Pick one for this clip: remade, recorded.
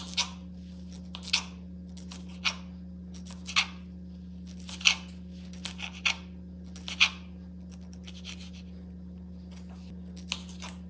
recorded